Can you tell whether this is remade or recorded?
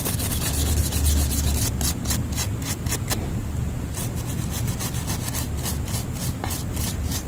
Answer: recorded